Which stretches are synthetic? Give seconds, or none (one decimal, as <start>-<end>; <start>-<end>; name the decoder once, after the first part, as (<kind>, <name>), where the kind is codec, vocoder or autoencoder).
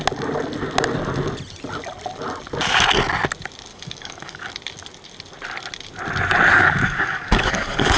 3.7-4.5 (codec, DAC); 6.5-8.0